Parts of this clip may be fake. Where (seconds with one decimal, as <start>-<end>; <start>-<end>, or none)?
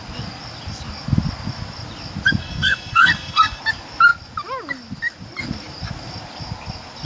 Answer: 2.4-3.6